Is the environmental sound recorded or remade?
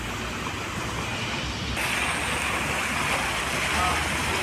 recorded